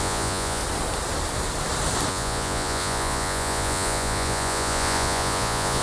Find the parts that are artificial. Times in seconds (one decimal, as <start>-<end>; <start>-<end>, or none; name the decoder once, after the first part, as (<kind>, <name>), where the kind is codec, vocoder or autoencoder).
0.0-0.6 (vocoder, Vocos); 2.1-5.8